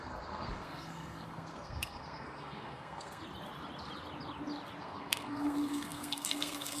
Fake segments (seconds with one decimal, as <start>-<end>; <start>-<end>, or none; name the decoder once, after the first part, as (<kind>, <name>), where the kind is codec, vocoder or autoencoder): 0.0-3.2 (codec, SNAC); 4.8-6.8